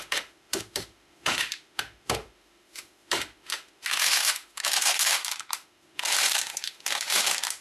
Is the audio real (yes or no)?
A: no